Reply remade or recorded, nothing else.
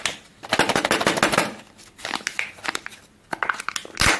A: recorded